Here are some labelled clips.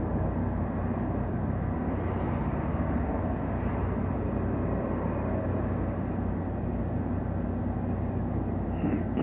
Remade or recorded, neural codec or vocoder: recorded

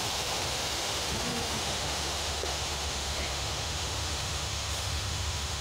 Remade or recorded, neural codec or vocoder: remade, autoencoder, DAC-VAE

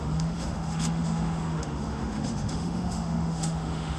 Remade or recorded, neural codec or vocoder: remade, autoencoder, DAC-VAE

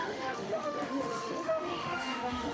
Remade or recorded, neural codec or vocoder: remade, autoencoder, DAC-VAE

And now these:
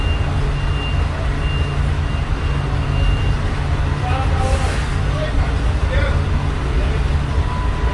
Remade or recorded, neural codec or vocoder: recorded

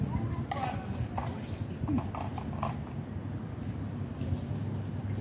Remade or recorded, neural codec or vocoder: recorded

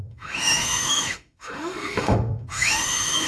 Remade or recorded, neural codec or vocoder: remade, autoencoder, DAC-VAE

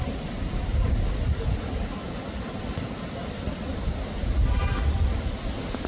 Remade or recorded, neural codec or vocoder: recorded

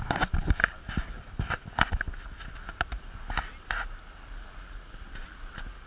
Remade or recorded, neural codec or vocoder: recorded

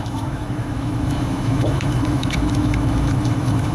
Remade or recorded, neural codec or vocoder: remade, autoencoder, DAC-VAE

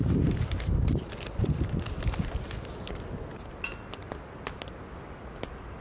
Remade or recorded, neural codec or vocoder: recorded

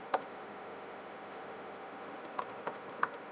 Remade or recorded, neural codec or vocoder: remade, autoencoder, DAC-VAE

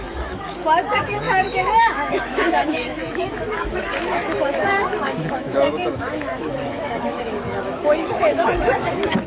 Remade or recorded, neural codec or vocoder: remade, autoencoder, DAC-VAE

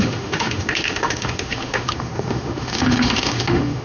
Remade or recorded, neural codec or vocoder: remade, autoencoder, DAC-VAE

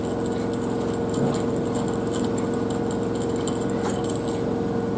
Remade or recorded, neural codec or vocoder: recorded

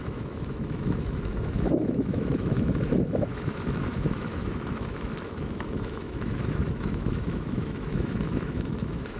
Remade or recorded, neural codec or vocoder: remade, autoencoder, DAC-VAE